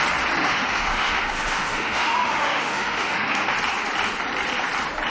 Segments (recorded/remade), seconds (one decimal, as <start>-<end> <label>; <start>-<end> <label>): 0.0-0.4 recorded; 0.4-3.5 remade; 3.5-5.1 recorded